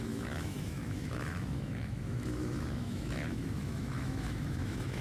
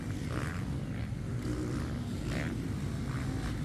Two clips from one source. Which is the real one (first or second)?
second